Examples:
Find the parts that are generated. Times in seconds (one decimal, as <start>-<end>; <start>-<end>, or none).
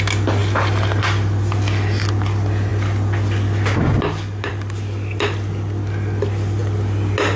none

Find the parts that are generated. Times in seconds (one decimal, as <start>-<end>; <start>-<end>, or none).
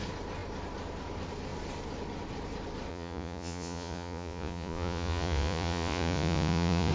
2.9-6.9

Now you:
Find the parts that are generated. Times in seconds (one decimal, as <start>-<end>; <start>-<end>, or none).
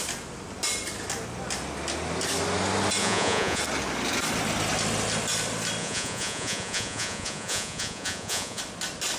3.0-3.6; 5.8-8.6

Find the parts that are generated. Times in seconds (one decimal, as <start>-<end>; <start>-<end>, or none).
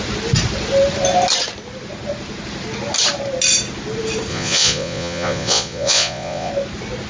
4.3-6.5